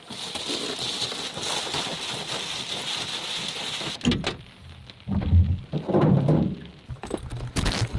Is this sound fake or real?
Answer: real